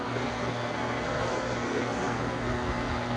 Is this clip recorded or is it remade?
remade